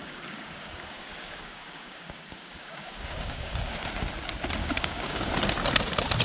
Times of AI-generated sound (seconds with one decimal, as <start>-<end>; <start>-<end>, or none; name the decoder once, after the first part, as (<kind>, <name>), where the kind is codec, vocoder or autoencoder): 0.0-3.7 (codec, DAC); 4.6-5.3